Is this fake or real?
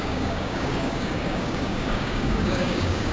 fake